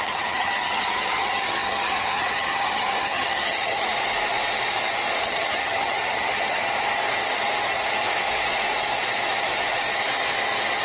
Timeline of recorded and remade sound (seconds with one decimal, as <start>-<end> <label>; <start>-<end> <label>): 0.0-3.9 remade; 3.9-5.2 recorded; 5.2-6.6 remade; 6.6-10.8 recorded